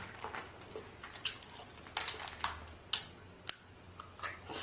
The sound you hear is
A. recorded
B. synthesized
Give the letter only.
A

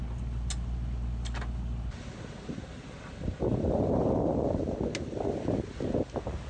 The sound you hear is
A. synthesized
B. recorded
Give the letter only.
B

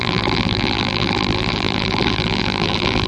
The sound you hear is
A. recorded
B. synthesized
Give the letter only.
B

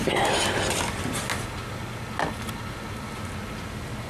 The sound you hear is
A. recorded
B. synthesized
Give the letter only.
A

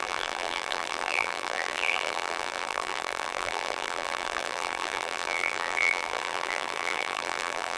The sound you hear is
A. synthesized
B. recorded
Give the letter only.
A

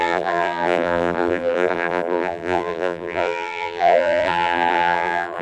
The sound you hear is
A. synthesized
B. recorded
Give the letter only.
A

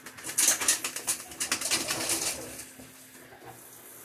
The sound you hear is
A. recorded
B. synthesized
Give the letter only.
A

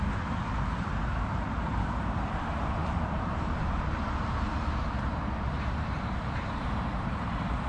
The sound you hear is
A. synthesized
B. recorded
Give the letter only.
A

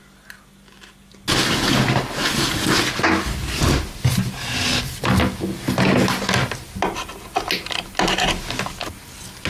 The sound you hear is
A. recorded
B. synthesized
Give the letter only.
A